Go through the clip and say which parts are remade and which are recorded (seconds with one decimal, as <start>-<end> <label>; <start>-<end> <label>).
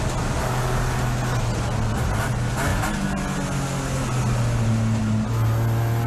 0.0-6.1 recorded